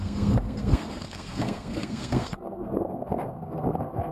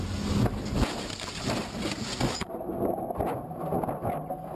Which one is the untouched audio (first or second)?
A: second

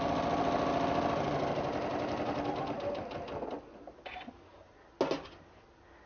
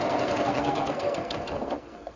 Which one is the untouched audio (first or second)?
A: first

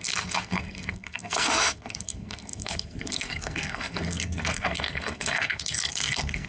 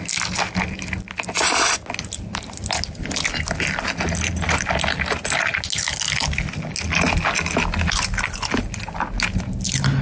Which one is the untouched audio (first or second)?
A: second